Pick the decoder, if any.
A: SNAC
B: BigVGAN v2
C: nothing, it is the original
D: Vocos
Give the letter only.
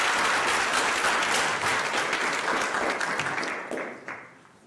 C